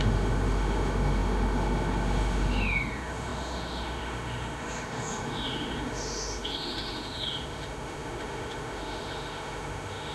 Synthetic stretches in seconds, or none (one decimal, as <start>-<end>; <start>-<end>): 0.0-10.1

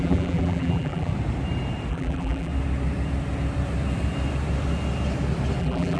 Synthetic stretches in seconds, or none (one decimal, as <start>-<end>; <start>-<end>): 0.0-1.1; 1.9-2.5; 5.6-6.0